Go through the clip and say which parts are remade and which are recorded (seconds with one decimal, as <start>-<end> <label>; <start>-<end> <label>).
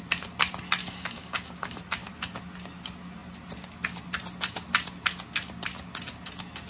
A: 0.0-0.8 recorded; 0.8-1.8 remade; 1.8-6.7 recorded